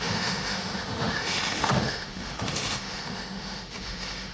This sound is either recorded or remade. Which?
remade